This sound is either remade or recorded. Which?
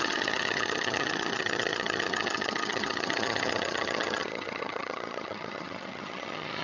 remade